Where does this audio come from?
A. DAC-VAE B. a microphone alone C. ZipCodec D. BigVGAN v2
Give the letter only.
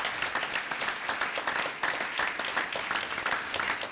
B